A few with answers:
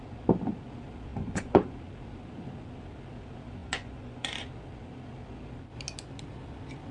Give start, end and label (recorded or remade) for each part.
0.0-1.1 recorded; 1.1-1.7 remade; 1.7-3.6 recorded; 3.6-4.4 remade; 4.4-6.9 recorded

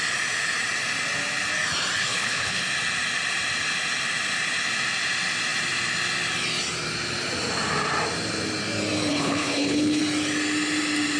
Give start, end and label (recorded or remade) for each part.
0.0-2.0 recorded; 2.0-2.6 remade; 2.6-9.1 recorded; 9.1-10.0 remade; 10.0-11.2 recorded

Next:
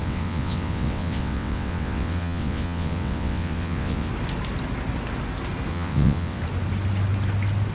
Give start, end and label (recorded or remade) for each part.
0.0-4.1 remade; 4.1-5.7 recorded; 5.7-6.4 remade; 6.4-7.7 recorded

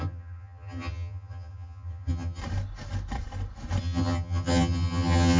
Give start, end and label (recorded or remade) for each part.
0.0-2.4 remade; 2.4-3.8 recorded; 3.8-5.4 remade

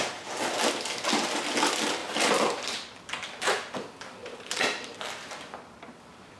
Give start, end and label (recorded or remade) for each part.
0.0-2.0 recorded; 2.0-3.0 remade; 3.0-4.2 recorded; 4.2-4.9 remade; 4.9-6.4 recorded

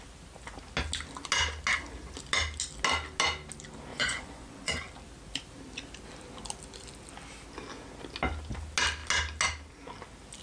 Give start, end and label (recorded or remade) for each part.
0.0-3.9 recorded; 3.9-4.7 remade; 4.7-10.4 recorded